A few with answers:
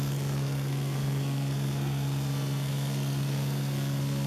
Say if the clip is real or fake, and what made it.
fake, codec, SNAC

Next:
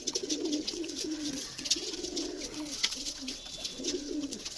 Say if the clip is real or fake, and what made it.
fake, vocoder, WaveNeXt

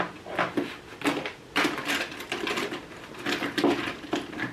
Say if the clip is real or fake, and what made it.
real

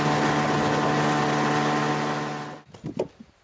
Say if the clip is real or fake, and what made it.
real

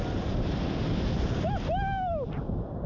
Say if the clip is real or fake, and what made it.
real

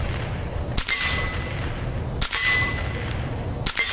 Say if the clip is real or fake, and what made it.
real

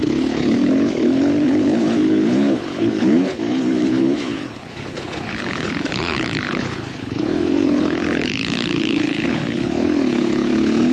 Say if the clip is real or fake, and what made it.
fake, codec, HILCodec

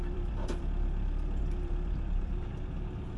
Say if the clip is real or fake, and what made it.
fake, vocoder, BigVGAN v2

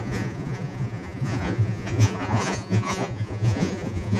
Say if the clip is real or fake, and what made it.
fake, vocoder, Vocos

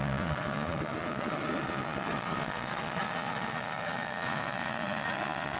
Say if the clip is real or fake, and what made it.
fake, vocoder, Vocos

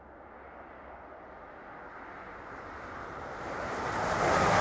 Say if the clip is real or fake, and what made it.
real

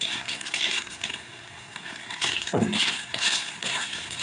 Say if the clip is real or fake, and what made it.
fake, codec, SNAC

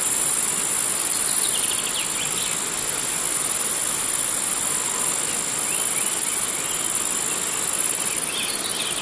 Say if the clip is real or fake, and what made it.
real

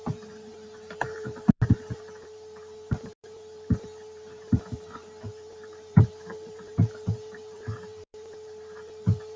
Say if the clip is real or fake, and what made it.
fake, vocoder, BigVGAN v2